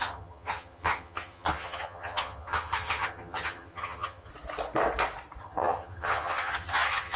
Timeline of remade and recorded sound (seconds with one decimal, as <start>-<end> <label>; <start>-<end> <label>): 0.0-4.3 remade; 4.3-5.4 recorded; 5.4-7.2 remade